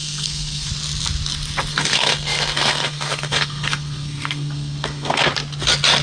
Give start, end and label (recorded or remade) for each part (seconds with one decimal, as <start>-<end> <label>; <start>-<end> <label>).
0.0-0.7 remade; 0.7-1.7 recorded; 1.7-5.3 remade; 5.3-6.0 recorded